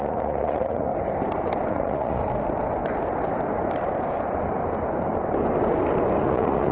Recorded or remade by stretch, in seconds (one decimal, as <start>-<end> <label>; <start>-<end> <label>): 0.0-0.9 remade; 0.9-1.7 recorded; 1.7-2.2 remade; 2.2-6.2 recorded; 6.2-6.7 remade